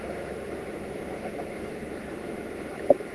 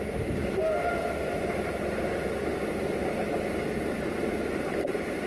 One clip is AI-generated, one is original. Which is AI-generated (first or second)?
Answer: first